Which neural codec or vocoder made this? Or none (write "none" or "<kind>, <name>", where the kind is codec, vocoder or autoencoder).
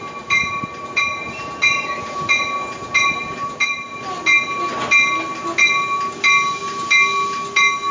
none